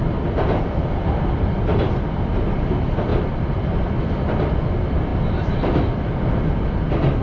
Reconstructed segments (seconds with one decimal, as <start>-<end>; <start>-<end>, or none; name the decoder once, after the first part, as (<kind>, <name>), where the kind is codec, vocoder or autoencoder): 0.0-2.0 (vocoder, BigVGAN v2); 3.1-3.9; 5.1-6.1